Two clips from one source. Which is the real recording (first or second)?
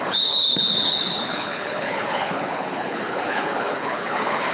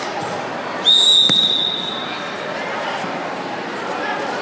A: second